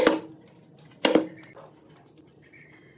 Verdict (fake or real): real